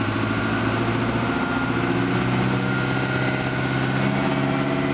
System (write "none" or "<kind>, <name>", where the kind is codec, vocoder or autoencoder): none